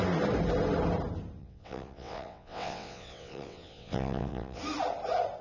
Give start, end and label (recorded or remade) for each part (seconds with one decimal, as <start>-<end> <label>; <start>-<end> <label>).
0.0-1.4 recorded; 1.4-4.6 remade; 4.6-5.4 recorded